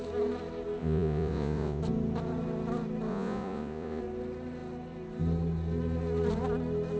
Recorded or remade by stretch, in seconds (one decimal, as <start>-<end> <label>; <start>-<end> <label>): 0.0-0.8 recorded; 0.8-1.8 remade; 1.8-3.1 recorded; 3.1-4.0 remade; 4.0-7.0 recorded